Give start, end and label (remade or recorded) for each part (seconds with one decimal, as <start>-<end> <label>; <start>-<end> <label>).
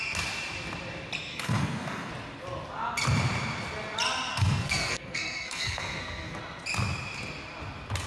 0.0-1.3 recorded; 1.3-2.1 remade; 2.1-4.3 recorded; 4.3-6.4 remade; 6.4-8.1 recorded